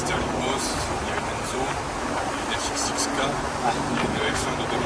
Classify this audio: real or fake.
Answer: real